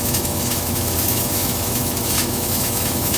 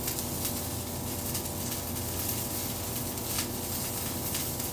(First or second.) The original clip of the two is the second